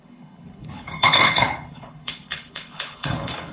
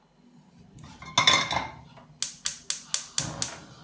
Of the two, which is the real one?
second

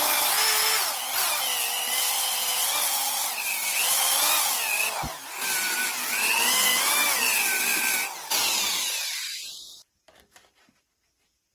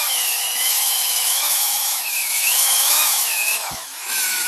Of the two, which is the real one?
first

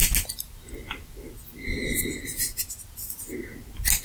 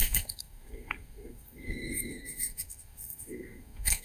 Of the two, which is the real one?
first